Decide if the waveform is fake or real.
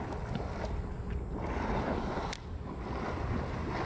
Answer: real